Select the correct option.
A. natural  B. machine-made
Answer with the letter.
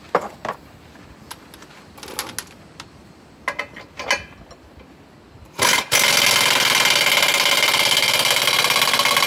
A